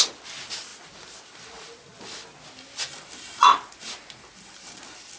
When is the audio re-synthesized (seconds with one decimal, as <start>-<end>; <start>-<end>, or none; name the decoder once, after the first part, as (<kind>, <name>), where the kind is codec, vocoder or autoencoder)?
none